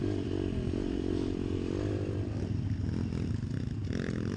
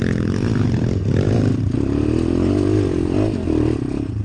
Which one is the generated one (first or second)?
first